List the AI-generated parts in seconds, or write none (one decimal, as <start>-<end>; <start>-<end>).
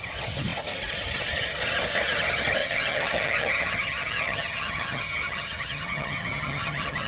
2.6-7.1